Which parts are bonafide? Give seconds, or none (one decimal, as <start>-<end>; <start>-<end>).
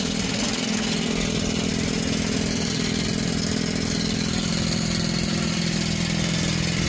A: 0.0-6.9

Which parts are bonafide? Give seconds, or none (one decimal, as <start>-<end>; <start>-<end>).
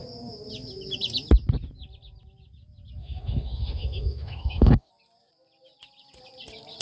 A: 0.0-3.0; 4.9-6.8